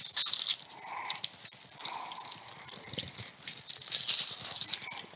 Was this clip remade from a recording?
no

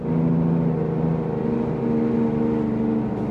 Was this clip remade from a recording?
no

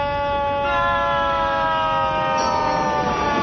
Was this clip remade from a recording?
no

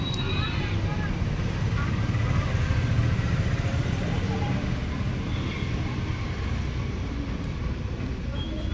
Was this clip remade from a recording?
no